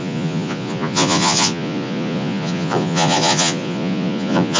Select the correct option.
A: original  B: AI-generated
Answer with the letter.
B